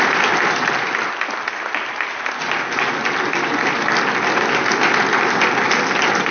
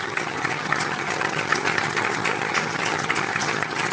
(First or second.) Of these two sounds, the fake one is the second